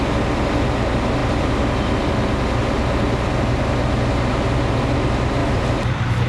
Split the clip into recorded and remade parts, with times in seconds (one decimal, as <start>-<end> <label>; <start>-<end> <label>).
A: 0.0-5.4 recorded; 5.4-6.3 remade